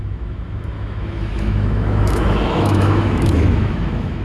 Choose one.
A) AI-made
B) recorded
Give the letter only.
A